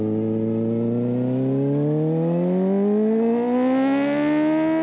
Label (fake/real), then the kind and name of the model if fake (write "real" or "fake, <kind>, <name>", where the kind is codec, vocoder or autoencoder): real